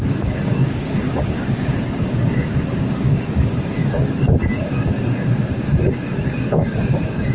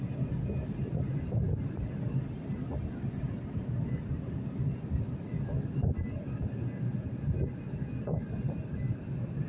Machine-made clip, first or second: first